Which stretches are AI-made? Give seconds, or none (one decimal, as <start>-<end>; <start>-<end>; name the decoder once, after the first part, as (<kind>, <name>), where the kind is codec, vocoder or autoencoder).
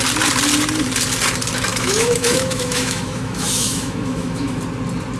1.7-4.6 (autoencoder, DAC-VAE)